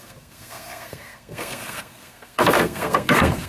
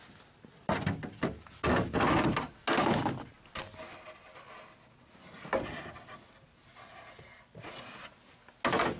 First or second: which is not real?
first